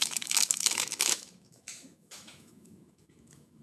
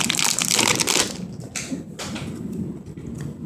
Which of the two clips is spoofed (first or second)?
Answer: first